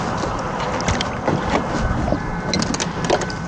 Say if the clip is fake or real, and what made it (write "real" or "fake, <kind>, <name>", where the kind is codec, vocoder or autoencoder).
real